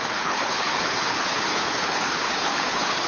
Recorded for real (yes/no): no